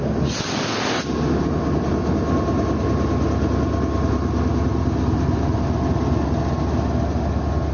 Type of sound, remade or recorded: recorded